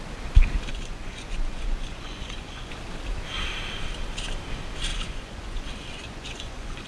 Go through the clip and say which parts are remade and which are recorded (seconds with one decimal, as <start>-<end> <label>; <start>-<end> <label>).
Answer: 0.0-0.7 recorded; 0.7-2.7 remade; 2.7-4.9 recorded; 4.9-6.9 remade